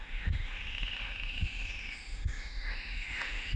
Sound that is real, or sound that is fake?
fake